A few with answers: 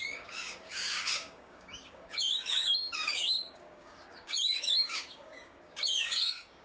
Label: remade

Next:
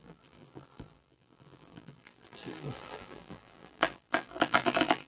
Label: remade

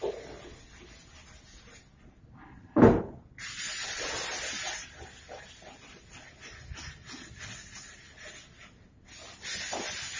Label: recorded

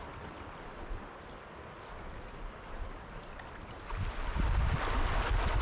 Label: recorded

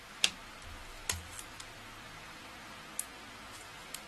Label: recorded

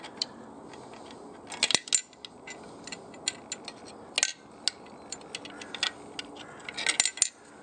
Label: recorded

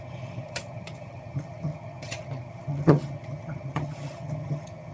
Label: remade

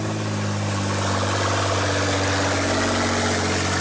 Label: recorded